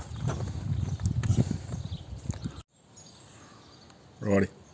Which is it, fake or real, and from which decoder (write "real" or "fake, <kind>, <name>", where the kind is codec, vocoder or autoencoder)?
real